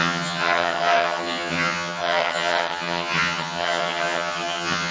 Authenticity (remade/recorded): remade